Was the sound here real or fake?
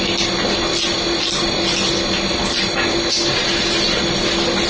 real